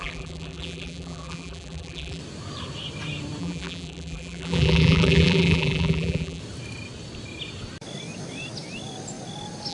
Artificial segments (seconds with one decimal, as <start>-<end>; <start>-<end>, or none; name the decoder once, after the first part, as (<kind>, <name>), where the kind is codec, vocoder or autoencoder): 0.0-2.2 (vocoder, BigVGAN v2); 3.4-6.4